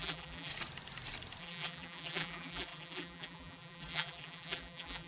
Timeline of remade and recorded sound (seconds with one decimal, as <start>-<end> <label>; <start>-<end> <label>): 0.0-0.5 remade; 0.5-1.4 recorded; 1.4-5.1 remade